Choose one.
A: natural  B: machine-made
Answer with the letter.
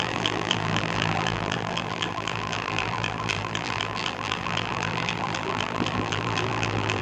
B